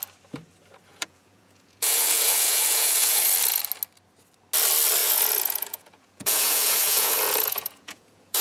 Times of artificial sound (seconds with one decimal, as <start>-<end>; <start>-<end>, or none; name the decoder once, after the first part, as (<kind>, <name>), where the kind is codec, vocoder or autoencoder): 0.9-3.6 (vocoder, Vocos); 5.0-8.4